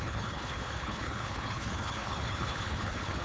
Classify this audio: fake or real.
fake